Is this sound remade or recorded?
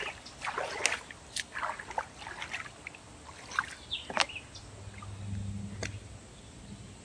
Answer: recorded